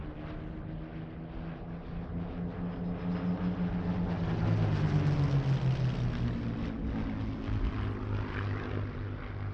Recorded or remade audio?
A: recorded